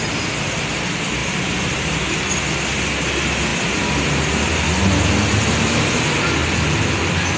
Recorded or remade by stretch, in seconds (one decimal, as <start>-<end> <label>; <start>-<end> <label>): 0.0-1.2 recorded; 1.2-1.7 remade; 1.7-6.4 recorded; 6.4-7.4 remade